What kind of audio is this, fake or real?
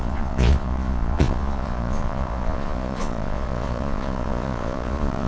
fake